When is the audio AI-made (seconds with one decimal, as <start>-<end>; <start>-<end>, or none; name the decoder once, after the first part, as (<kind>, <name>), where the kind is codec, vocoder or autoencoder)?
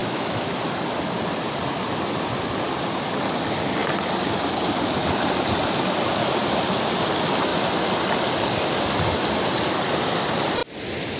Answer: 0.0-0.5 (autoencoder, DAC-VAE)